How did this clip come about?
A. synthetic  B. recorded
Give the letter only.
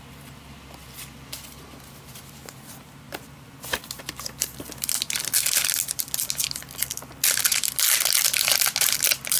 B